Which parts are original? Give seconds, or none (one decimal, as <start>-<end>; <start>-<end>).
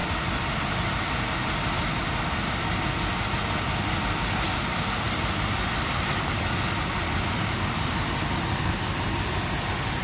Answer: 0.0-10.0